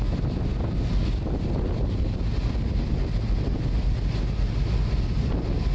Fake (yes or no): no